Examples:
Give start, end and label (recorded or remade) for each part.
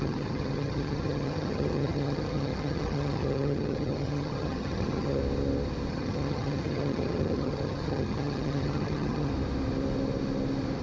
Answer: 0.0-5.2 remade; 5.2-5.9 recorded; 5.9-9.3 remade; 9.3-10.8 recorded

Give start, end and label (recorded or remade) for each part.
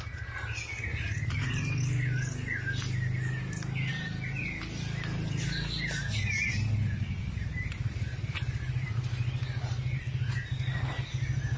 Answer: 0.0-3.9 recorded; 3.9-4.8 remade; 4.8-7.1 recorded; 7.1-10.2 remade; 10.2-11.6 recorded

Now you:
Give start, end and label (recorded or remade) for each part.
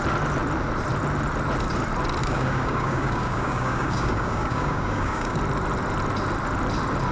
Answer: 0.0-2.2 recorded; 2.2-5.4 remade; 5.4-7.1 recorded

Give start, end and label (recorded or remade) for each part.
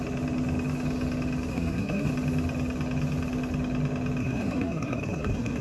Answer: 0.0-1.5 recorded; 1.5-2.1 remade; 2.1-4.2 recorded; 4.2-5.6 remade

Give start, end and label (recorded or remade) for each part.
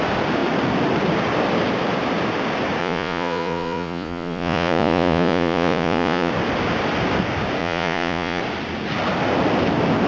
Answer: 0.0-2.8 recorded; 2.8-6.3 remade; 6.3-7.6 recorded; 7.6-8.4 remade; 8.4-10.1 recorded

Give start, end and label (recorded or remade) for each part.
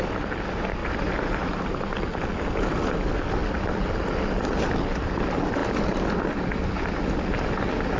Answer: 0.0-0.8 recorded; 0.8-1.9 remade; 1.9-8.0 recorded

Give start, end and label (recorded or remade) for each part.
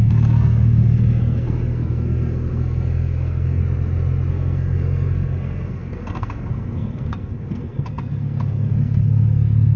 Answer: 0.0-3.6 remade; 3.6-4.3 recorded; 4.3-9.8 remade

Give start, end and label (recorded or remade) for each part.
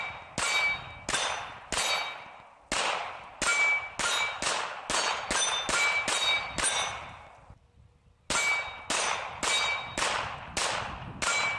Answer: 0.0-11.6 recorded